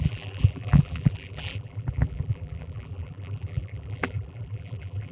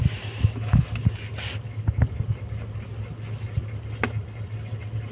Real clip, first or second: second